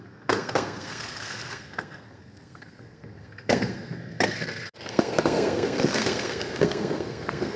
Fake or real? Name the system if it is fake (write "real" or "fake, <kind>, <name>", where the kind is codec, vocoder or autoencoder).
fake, codec, SNAC